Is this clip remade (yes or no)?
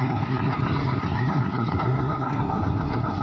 yes